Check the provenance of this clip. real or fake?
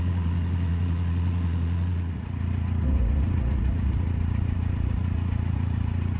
fake